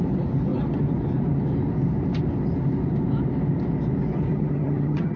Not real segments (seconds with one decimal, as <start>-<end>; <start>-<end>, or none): 4.3-5.2